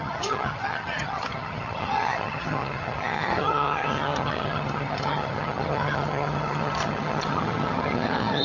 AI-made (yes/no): yes